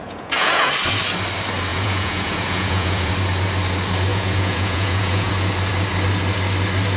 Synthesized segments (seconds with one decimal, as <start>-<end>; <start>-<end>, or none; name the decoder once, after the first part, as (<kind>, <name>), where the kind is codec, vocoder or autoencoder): 0.0-0.7 (vocoder, Vocos); 1.7-3.1; 4.1-5.3